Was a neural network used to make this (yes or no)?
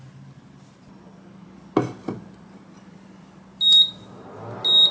no